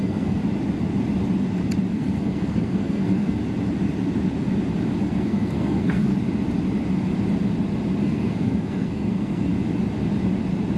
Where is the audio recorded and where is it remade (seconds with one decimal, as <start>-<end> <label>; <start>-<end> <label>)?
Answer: 0.0-0.4 remade; 0.4-1.9 recorded; 1.9-3.4 remade; 3.4-5.0 recorded; 5.0-6.1 remade; 6.1-8.0 recorded; 8.0-9.5 remade; 9.5-10.8 recorded